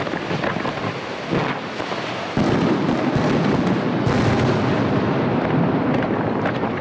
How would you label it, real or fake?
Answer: real